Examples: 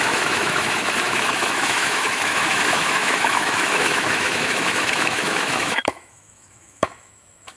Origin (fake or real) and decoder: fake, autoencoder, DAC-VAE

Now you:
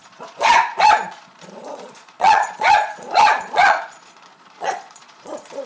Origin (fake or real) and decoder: fake, vocoder, Vocos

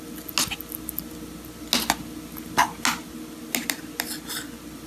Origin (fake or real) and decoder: real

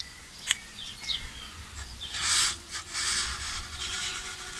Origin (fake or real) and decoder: fake, vocoder, Vocos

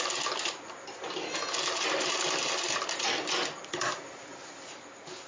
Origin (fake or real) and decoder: real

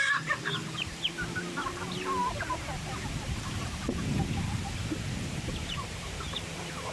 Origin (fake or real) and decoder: fake, vocoder, BigVGAN v2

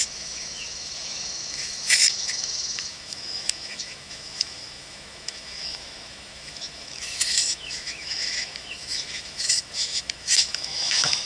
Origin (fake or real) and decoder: fake, autoencoder, DAC-VAE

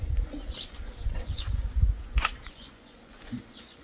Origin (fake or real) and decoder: fake, vocoder, Vocos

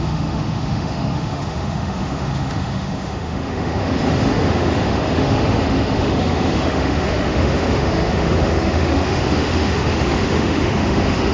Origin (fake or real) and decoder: fake, autoencoder, DAC-VAE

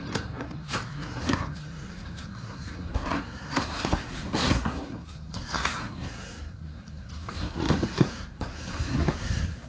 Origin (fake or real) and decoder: fake, codec, SNAC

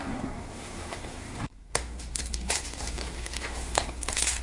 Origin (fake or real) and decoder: fake, codec, SNAC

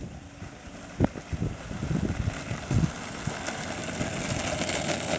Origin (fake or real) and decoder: real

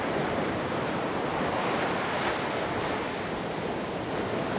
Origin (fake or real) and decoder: real